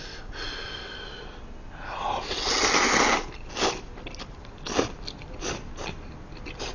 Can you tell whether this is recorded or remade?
recorded